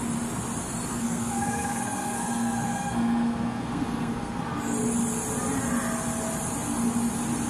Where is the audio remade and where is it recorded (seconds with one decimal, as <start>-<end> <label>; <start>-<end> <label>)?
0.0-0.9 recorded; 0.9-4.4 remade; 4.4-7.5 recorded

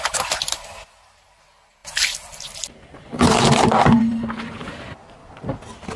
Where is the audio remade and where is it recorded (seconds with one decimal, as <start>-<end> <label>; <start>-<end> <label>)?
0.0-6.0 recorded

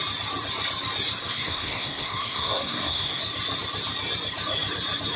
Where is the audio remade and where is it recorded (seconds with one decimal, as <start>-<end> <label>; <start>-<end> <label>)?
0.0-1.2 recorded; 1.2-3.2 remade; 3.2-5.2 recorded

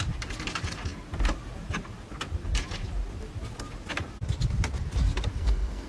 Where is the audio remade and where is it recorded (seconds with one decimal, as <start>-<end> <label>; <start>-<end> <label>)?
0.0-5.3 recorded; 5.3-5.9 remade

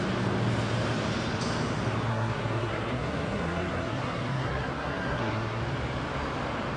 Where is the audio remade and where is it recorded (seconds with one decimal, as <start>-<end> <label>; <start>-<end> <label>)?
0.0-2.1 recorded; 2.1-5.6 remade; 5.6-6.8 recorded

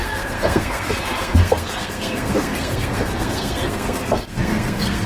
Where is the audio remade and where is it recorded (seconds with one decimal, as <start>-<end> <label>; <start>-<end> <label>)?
0.0-5.1 remade

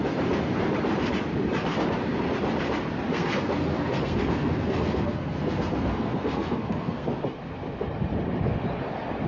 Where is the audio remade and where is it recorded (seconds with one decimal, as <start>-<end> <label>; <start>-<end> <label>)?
0.0-3.1 recorded; 3.1-7.2 remade; 7.2-9.3 recorded